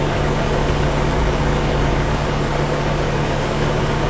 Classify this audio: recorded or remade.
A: remade